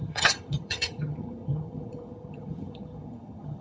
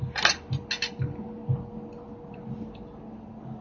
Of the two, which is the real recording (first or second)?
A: second